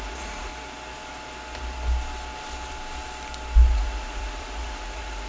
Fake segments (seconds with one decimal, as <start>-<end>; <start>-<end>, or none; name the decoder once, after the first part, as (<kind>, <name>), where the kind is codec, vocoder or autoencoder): 0.0-0.5 (vocoder, Vocos); 3.7-5.3